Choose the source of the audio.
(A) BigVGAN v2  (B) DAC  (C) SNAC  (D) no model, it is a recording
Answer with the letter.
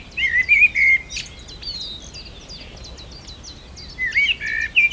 D